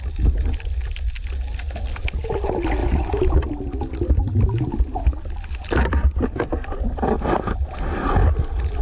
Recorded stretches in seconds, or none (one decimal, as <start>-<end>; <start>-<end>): 0.0-2.8; 3.5-8.8